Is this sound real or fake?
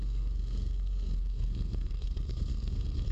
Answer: fake